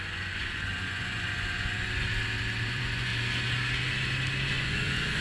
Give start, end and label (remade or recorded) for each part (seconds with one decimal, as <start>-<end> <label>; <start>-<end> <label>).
0.0-2.1 remade; 2.1-2.7 recorded; 2.7-3.1 remade; 3.1-4.5 recorded; 4.5-5.2 remade